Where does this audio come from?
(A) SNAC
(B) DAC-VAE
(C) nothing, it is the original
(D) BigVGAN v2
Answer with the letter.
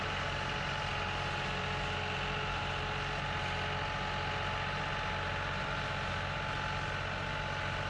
C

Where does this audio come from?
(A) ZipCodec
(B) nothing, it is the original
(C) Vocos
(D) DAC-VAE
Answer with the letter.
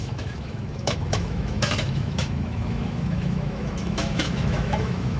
D